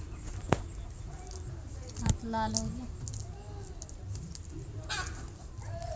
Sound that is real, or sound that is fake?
real